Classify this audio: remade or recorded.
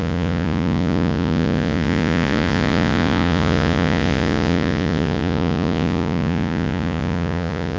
remade